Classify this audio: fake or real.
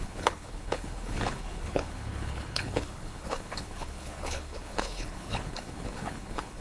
fake